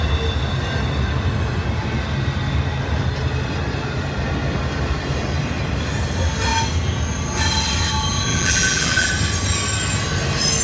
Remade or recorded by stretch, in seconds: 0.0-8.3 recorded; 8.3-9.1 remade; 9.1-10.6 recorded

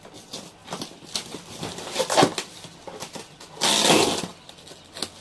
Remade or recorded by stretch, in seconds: 0.0-5.2 recorded

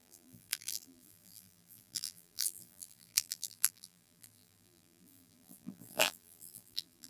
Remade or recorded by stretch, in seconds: 0.0-7.1 remade

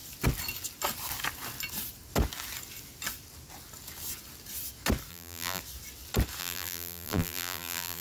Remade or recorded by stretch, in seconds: 0.0-5.1 recorded; 5.1-5.6 remade; 5.6-6.4 recorded; 6.4-8.0 remade

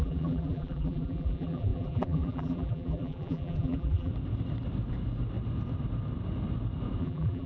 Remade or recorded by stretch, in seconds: 0.0-4.1 remade; 4.1-7.0 recorded; 7.0-7.5 remade

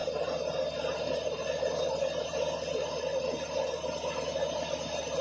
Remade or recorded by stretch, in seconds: 0.0-5.2 recorded

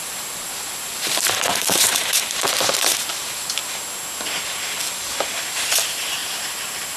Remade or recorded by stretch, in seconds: 0.0-3.6 remade; 3.6-5.7 recorded; 5.7-7.0 remade

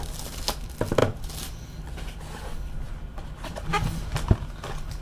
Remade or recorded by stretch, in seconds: 0.0-5.0 recorded